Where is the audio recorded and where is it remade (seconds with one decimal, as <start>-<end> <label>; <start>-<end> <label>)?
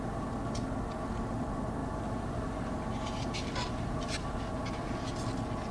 0.0-1.8 recorded; 1.8-4.6 remade; 4.6-5.7 recorded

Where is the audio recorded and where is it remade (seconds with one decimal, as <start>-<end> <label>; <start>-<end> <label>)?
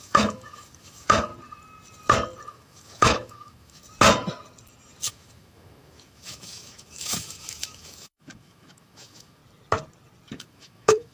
0.0-1.3 remade; 1.3-2.5 recorded; 2.5-3.8 remade; 3.8-5.1 recorded; 5.1-9.4 remade; 9.4-10.3 recorded; 10.3-11.1 remade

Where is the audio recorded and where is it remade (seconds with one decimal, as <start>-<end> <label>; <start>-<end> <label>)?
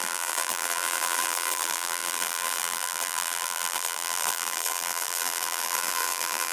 0.0-6.5 remade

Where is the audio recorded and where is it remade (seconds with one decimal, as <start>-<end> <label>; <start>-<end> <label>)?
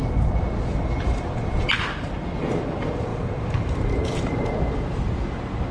0.0-0.7 recorded; 0.7-1.8 remade; 1.8-3.1 recorded; 3.1-4.3 remade; 4.3-5.7 recorded